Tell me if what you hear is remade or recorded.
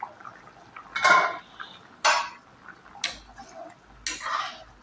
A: recorded